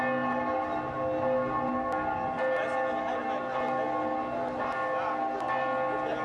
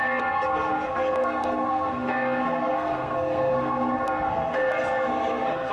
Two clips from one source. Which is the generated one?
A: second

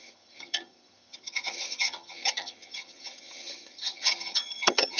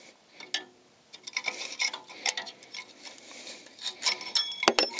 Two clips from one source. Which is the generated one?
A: first